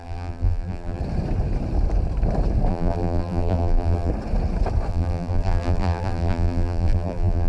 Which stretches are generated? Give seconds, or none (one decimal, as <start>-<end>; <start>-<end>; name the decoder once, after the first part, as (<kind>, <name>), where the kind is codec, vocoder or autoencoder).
0.0-1.0 (vocoder, BigVGAN v2); 2.7-4.1; 4.9-7.5